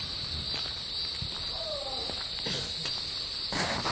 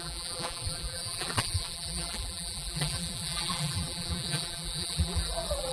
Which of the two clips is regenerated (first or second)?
second